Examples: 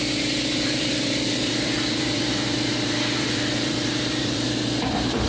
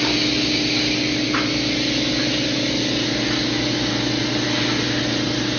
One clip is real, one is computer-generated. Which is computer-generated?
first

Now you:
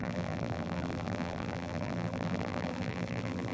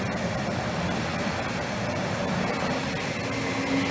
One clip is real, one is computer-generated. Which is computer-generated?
first